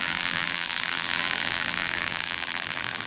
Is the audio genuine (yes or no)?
no